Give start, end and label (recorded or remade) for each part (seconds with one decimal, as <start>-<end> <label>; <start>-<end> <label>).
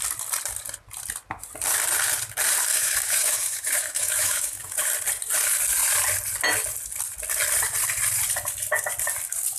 0.0-2.7 recorded; 2.7-4.9 remade; 4.9-9.6 recorded